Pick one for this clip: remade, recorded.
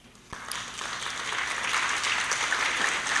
recorded